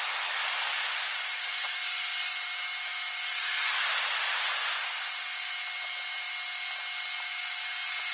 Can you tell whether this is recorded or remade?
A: recorded